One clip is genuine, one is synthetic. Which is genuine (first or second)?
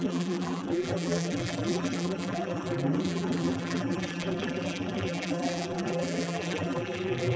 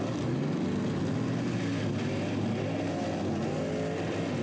second